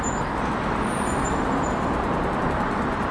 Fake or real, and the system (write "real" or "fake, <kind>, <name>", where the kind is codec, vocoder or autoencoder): real